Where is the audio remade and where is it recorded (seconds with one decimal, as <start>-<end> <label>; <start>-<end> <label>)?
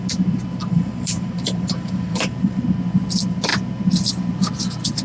0.0-0.6 recorded; 0.6-2.6 remade; 2.6-5.0 recorded